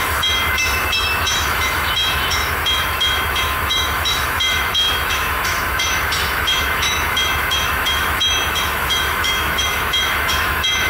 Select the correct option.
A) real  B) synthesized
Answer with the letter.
B